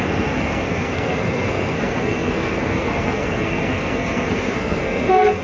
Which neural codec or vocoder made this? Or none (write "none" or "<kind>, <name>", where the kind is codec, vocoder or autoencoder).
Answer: codec, SNAC